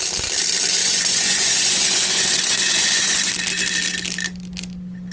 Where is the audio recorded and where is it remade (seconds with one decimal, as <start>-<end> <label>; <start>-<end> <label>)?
0.0-0.8 recorded; 0.8-3.3 remade; 3.3-5.1 recorded